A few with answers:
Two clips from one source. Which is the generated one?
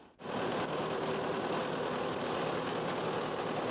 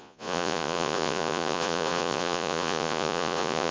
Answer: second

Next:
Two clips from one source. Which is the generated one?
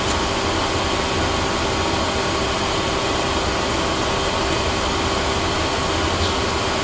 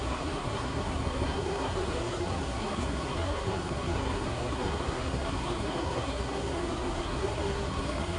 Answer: second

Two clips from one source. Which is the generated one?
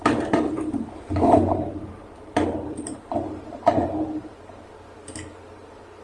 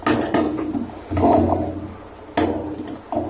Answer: first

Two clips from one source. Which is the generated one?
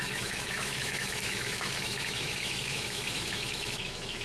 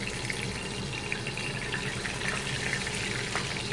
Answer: first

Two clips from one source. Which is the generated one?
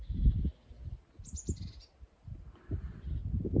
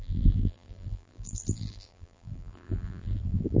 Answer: second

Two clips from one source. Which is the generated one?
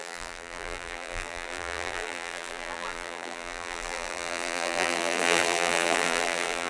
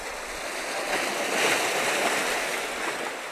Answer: first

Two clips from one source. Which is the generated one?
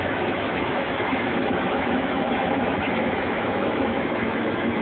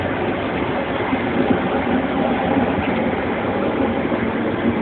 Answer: first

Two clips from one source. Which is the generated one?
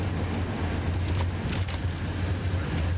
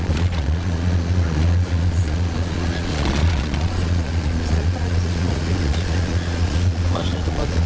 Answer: second